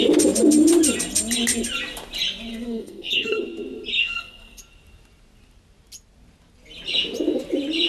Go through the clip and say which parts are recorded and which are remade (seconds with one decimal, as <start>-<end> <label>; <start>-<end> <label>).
0.0-2.5 recorded; 2.5-3.4 remade; 3.4-4.0 recorded; 4.0-4.6 remade; 4.6-7.9 recorded